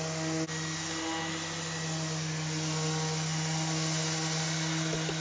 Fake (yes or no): no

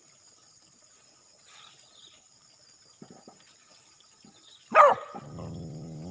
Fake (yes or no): no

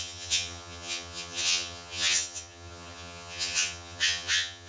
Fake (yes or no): yes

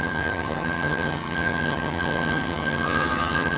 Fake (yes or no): yes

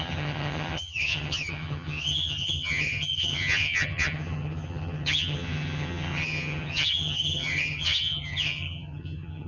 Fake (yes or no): yes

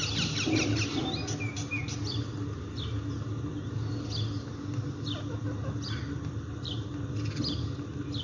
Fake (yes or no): no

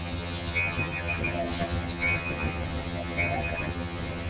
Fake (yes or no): yes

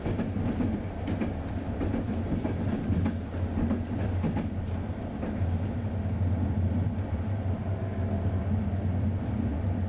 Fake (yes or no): no